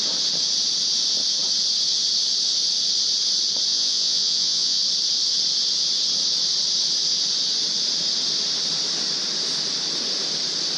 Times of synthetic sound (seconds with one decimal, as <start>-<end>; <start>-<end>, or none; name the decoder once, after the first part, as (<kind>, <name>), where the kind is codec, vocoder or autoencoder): 3.7-4.8 (vocoder, Vocos)